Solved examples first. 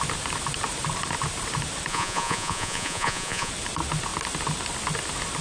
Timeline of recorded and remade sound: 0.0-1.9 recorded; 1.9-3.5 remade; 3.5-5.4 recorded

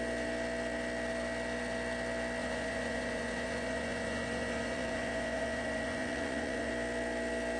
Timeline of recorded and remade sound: 0.0-2.4 recorded; 2.4-6.7 remade; 6.7-7.6 recorded